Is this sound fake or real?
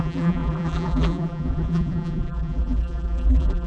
fake